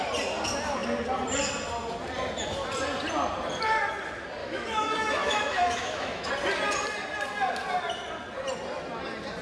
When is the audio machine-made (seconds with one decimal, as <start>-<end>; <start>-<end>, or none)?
4.4-6.3